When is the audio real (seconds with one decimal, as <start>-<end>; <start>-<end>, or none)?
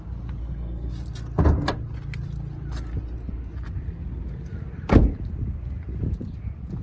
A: 0.0-0.4; 0.9-6.8